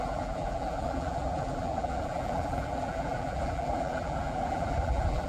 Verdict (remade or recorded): remade